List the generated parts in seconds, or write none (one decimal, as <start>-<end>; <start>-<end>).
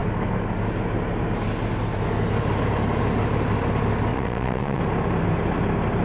4.1-4.8